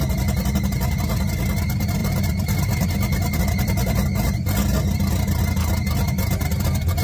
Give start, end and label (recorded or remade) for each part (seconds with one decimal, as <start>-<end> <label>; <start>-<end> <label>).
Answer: 0.0-2.0 recorded; 2.0-3.4 remade; 3.4-7.0 recorded